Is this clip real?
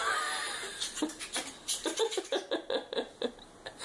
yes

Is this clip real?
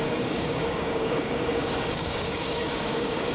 no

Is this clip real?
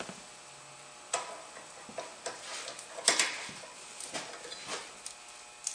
yes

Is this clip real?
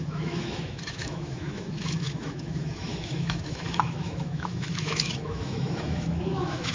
no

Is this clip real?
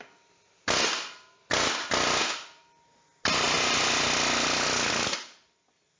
yes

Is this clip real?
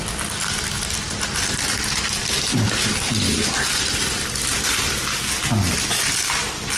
yes